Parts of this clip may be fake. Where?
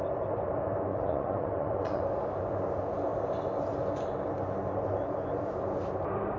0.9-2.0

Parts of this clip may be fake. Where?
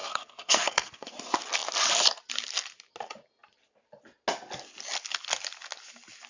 0.0-1.1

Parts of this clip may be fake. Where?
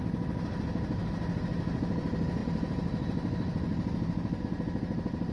2.4-4.4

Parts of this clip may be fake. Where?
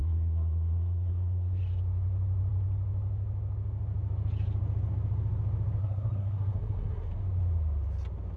0.0-1.6; 5.8-7.1